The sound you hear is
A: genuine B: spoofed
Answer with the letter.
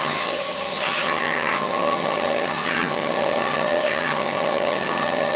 B